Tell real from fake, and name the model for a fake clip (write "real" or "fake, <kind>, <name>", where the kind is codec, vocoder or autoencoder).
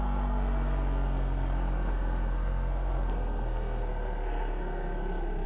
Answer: fake, codec, SNAC